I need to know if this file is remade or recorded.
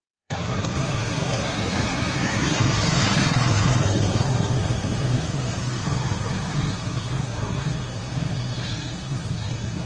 remade